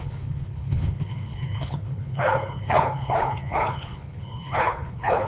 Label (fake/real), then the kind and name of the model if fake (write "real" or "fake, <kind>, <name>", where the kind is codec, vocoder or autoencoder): fake, codec, HILCodec